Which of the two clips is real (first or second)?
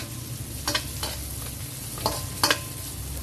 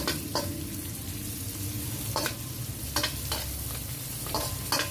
first